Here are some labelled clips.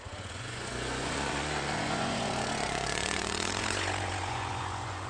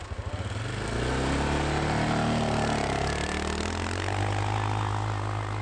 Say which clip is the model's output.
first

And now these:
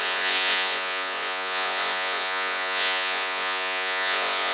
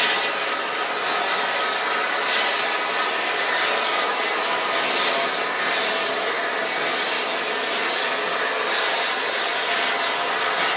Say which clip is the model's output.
first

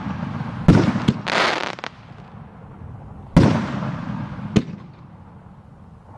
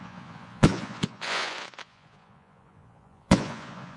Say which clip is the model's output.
second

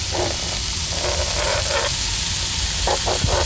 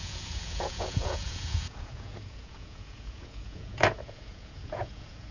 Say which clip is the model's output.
second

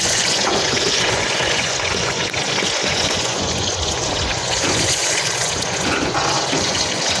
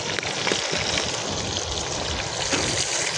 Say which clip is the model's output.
first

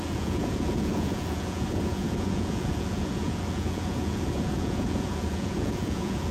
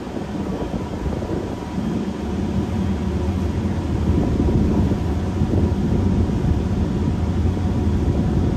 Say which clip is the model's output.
first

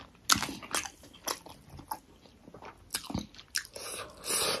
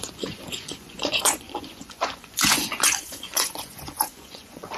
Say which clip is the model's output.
second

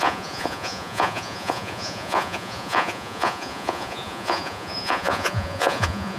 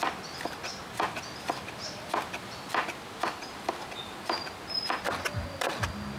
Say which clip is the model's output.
first